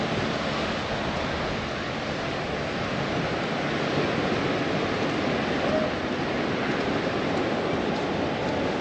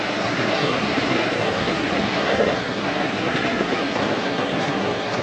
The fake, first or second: second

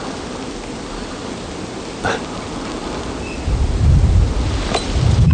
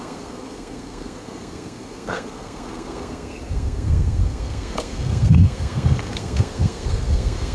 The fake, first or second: second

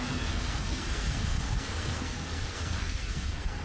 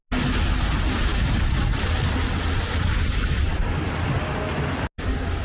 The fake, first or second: first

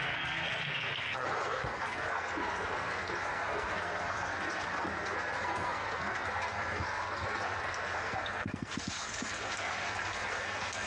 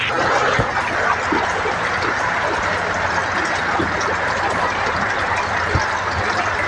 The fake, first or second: first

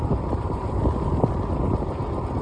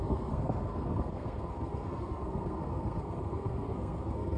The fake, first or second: second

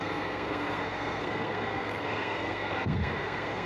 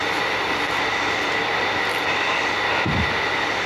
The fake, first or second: first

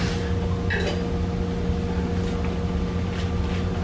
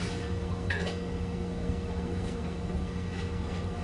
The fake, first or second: second